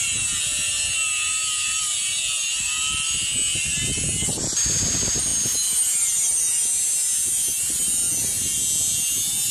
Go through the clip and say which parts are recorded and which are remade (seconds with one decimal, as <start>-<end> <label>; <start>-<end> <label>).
0.0-9.5 recorded